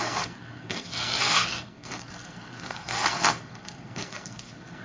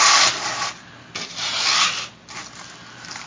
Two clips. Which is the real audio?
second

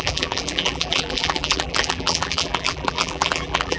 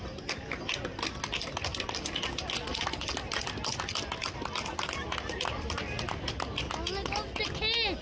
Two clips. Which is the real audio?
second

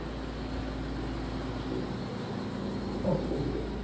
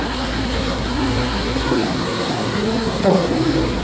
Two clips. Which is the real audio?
first